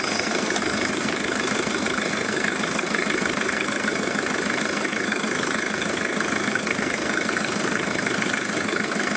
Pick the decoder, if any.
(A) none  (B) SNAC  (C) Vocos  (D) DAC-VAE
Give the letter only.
B